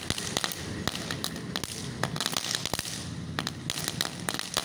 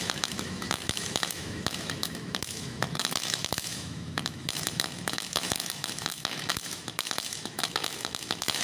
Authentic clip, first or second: first